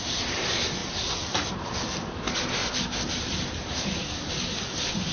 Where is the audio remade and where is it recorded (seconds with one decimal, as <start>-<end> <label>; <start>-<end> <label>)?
0.0-5.1 remade